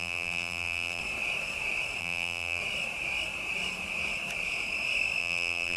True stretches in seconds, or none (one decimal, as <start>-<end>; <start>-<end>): 1.0-2.0; 2.6-5.2